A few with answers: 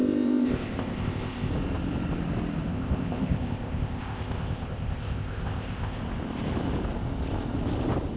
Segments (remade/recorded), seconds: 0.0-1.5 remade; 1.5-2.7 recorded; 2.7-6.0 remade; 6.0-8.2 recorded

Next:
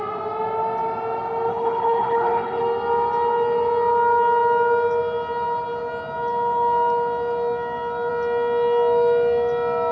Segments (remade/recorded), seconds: 0.0-1.5 recorded; 1.5-2.6 remade; 2.6-9.9 recorded

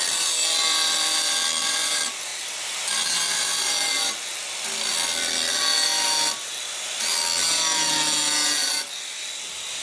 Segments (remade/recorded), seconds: 0.0-8.6 recorded; 8.6-9.2 remade; 9.2-9.8 recorded

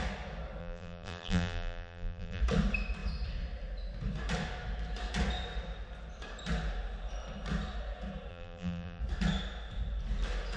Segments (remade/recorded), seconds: 0.0-0.6 recorded; 0.6-2.4 remade; 2.4-8.3 recorded; 8.3-9.0 remade; 9.0-10.6 recorded

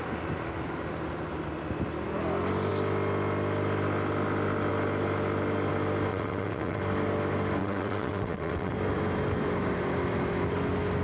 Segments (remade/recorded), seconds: 0.0-6.1 recorded; 6.1-6.8 remade; 6.8-7.6 recorded; 7.6-8.7 remade; 8.7-11.0 recorded

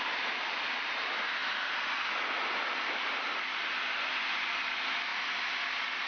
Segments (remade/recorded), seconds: 0.0-6.1 recorded